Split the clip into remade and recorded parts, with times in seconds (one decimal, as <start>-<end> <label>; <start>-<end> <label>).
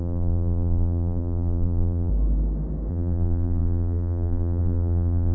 0.0-2.1 remade; 2.1-2.9 recorded; 2.9-5.3 remade